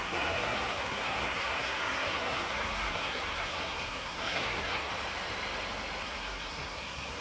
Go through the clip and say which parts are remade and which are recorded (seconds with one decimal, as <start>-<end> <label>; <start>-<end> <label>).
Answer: 0.0-4.9 remade; 4.9-6.0 recorded; 6.0-7.2 remade